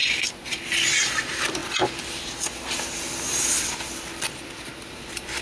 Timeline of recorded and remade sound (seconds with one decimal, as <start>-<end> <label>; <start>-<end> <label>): 0.0-1.0 recorded; 1.0-1.6 remade; 1.6-4.8 recorded; 4.8-5.4 remade